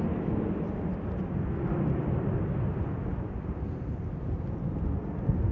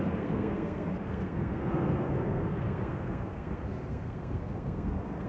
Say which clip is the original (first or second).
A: first